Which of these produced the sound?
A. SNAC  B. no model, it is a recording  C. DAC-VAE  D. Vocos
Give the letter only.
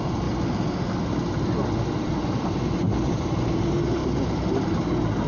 B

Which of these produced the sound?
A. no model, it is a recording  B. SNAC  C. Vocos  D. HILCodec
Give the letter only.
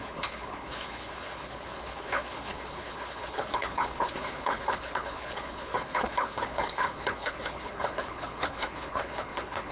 D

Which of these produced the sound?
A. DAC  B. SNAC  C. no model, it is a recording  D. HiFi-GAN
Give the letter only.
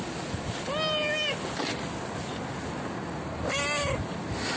C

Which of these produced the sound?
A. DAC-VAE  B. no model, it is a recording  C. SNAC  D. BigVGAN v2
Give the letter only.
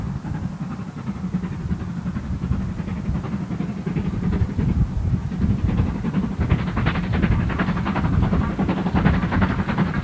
B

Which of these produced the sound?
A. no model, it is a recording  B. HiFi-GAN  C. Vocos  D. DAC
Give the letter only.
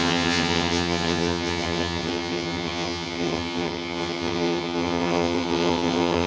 B